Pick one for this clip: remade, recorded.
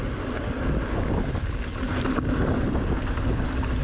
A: recorded